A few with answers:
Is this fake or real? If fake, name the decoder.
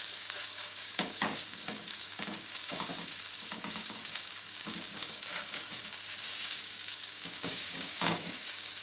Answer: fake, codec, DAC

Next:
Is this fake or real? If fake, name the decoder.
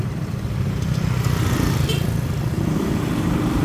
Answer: real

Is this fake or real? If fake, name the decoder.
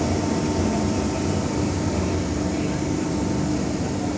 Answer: real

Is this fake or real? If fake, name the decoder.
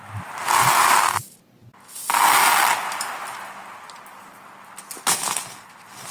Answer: real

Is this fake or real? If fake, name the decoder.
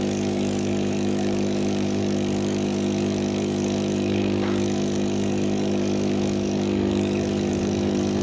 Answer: fake, codec, DAC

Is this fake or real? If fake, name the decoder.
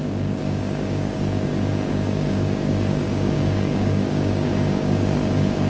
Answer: fake, codec, DAC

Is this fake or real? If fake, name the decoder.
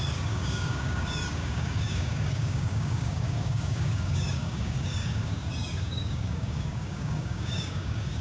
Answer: fake, codec, DAC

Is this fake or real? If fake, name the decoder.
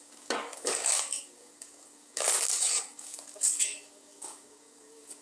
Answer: fake, codec, DAC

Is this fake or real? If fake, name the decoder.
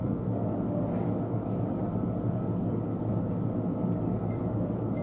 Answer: fake, codec, DAC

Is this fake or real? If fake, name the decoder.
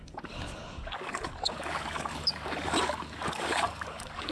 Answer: fake, codec, DAC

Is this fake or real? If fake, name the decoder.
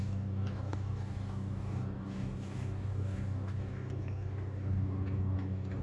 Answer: fake, codec, DAC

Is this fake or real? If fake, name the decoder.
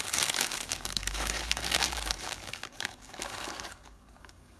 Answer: fake, codec, DAC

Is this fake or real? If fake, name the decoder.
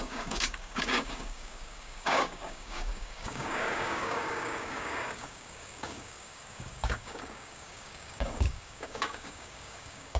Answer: fake, codec, DAC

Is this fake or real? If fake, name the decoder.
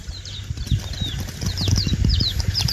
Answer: real